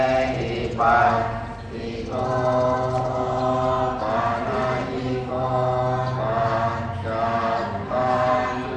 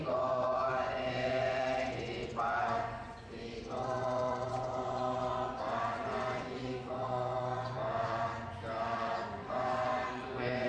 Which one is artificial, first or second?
second